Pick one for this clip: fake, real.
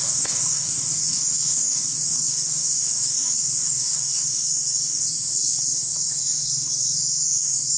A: fake